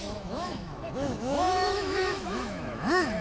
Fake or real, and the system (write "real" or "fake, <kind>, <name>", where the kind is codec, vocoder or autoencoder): fake, autoencoder, DAC-VAE